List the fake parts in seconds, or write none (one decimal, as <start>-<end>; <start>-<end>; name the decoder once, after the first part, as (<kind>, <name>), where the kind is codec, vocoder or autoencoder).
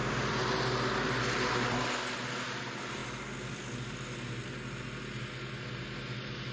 none